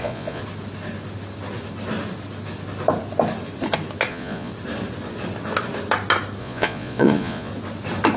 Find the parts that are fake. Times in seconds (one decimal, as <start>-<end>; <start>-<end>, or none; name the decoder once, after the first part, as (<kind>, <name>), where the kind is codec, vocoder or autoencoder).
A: 0.0-0.4 (vocoder, Vocos); 4.1-4.5; 6.4-7.5